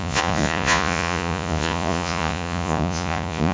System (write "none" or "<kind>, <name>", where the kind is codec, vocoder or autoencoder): vocoder, Vocos